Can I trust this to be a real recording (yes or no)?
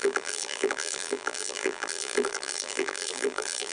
no